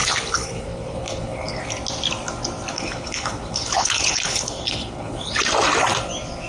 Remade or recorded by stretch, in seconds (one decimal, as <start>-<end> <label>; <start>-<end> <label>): 0.0-1.6 remade; 1.6-2.7 recorded; 2.7-5.4 remade; 5.4-6.5 recorded